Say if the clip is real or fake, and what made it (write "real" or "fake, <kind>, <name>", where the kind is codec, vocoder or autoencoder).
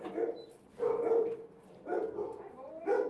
real